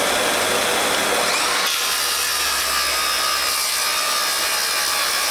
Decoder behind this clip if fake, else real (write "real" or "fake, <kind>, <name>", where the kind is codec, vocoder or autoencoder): real